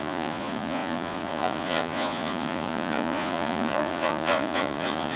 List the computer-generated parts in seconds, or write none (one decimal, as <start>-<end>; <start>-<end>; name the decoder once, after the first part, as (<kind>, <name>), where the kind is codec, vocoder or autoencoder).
0.0-5.2 (vocoder, Vocos)